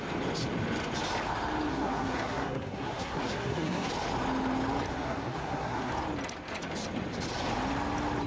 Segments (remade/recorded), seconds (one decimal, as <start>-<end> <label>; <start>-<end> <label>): 0.0-1.7 recorded; 1.7-3.9 remade; 3.9-4.9 recorded; 4.9-5.9 remade; 5.9-8.3 recorded